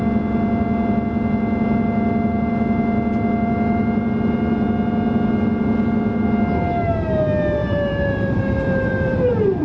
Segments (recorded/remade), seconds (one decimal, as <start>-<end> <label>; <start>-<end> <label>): 0.0-7.6 recorded; 7.6-9.6 remade